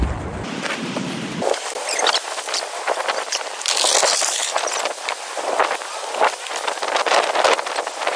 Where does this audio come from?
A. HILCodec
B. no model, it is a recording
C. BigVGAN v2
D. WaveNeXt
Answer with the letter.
C